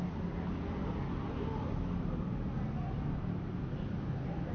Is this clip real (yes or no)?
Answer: yes